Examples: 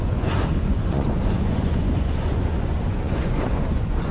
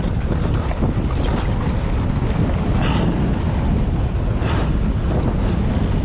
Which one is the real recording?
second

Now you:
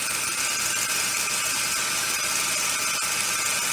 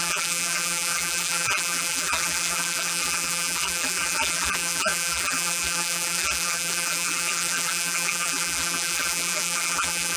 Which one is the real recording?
first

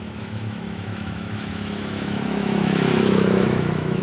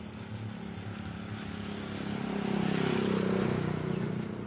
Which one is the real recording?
second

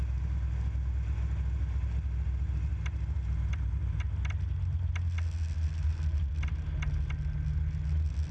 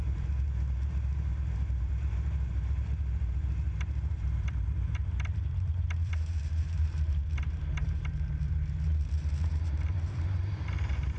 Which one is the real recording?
first